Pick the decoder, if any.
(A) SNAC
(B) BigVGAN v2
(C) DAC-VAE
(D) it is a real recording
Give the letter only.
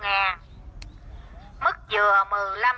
D